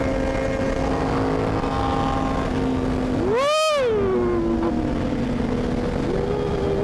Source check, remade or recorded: recorded